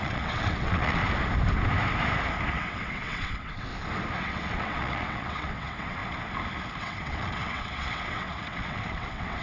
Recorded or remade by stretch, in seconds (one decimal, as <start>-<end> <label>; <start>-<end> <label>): 0.0-1.0 remade; 1.0-2.5 recorded; 2.5-3.7 remade; 3.7-4.2 recorded; 4.2-6.0 remade; 6.0-6.8 recorded; 6.8-9.4 remade